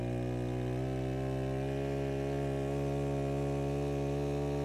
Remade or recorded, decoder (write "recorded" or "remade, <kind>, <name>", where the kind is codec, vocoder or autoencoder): recorded